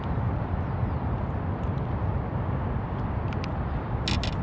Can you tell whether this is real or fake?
real